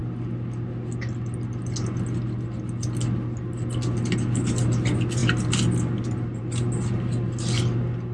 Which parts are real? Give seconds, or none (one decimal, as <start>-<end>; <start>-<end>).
0.0-8.1

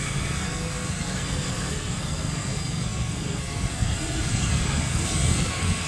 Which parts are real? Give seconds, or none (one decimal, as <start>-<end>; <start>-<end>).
none

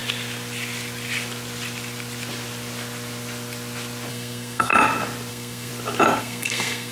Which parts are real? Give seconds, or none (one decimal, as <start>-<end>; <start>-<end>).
0.0-4.1; 4.7-5.3; 5.7-6.2

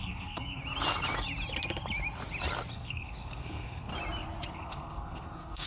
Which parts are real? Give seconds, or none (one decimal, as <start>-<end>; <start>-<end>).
0.6-2.7; 3.9-4.5